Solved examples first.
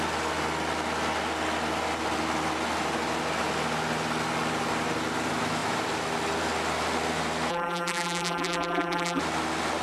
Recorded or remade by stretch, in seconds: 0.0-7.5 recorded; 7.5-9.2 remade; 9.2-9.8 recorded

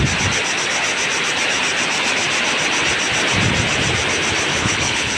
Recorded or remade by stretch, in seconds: 0.0-4.5 recorded; 4.5-5.2 remade

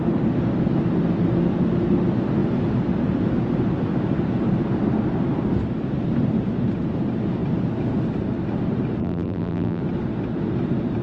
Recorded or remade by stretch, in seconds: 0.0-9.0 recorded; 9.0-9.8 remade; 9.8-11.0 recorded

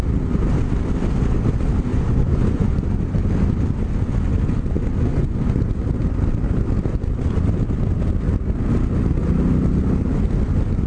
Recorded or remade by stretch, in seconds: 0.0-1.9 recorded; 1.9-2.8 remade; 2.8-5.1 recorded; 5.1-5.6 remade; 5.6-10.9 recorded

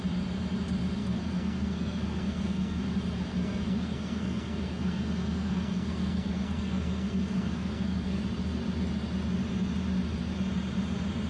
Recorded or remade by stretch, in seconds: 0.0-1.0 recorded; 1.0-2.8 remade; 2.8-3.3 recorded; 3.3-8.2 remade; 8.2-11.3 recorded

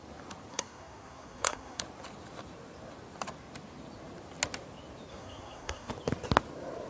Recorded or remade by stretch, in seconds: 0.0-0.5 recorded; 0.5-1.8 remade; 1.8-5.1 recorded; 5.1-5.9 remade; 5.9-6.9 recorded